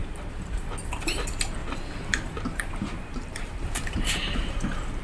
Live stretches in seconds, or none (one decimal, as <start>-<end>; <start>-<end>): 0.0-1.6; 4.6-5.0